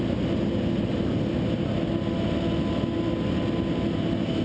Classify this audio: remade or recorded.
recorded